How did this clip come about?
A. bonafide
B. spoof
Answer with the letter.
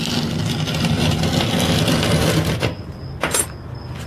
A